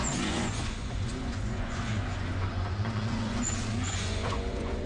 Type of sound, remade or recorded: remade